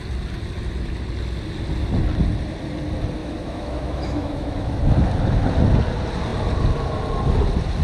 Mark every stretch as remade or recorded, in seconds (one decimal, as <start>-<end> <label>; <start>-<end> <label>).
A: 0.0-3.2 recorded; 3.2-4.8 remade; 4.8-7.8 recorded